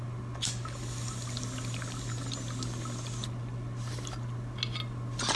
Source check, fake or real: real